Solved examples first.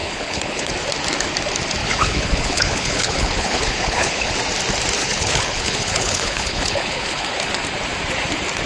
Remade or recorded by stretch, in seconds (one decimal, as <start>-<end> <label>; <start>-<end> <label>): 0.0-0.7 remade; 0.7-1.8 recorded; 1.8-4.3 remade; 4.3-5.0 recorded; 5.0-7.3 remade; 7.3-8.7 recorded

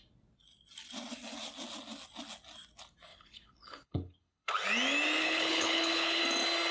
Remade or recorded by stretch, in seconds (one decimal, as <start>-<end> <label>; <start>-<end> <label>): 0.0-3.1 recorded; 3.1-4.5 remade; 4.5-5.2 recorded; 5.2-6.2 remade; 6.2-6.7 recorded

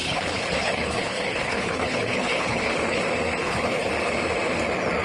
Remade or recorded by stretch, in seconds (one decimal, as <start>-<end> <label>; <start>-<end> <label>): 0.0-3.0 remade; 3.0-3.4 recorded; 3.4-3.9 remade; 3.9-5.0 recorded

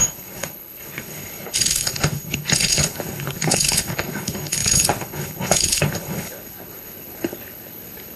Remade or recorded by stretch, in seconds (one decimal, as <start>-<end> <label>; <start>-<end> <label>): 0.0-8.2 remade

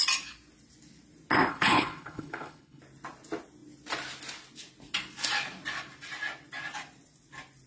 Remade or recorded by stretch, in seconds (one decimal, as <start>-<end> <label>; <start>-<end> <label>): 0.0-1.5 recorded; 1.5-2.8 remade; 2.8-7.7 recorded

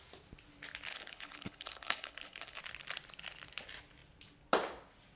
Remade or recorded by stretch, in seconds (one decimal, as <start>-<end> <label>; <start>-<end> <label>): 0.0-0.9 recorded; 0.9-2.6 remade; 2.6-5.2 recorded

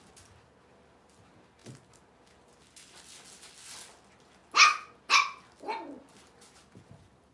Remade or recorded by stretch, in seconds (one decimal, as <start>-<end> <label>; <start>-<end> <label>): 0.0-7.3 recorded